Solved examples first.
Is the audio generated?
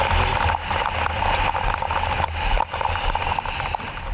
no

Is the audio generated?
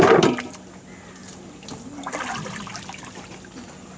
no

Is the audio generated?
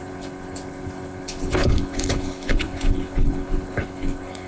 yes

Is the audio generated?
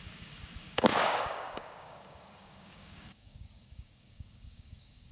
yes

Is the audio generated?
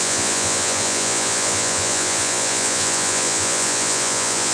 yes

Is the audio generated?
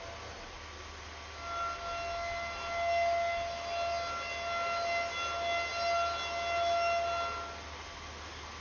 no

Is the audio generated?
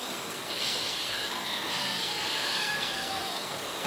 yes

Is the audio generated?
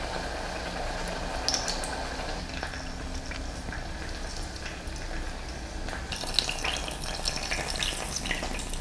no